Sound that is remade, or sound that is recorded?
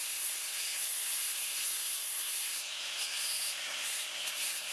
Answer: remade